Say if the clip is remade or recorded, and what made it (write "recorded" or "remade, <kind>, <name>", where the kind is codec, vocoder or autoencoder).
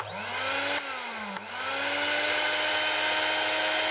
recorded